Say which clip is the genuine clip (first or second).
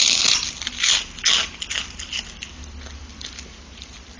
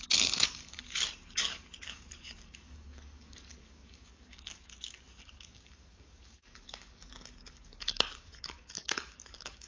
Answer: first